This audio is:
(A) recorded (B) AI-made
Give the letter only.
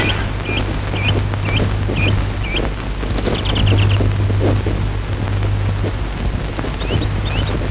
A